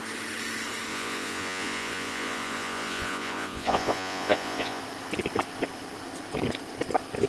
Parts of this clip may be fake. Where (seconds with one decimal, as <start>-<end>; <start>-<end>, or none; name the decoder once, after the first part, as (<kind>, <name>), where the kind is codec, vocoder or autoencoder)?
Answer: 0.9-4.8 (vocoder, Vocos)